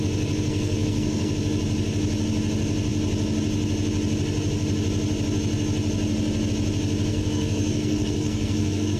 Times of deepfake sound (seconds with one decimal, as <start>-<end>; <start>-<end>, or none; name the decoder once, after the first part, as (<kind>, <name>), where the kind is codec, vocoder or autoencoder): 0.5-1.3 (codec, SNAC); 7.1-9.0